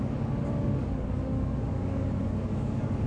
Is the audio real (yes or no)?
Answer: no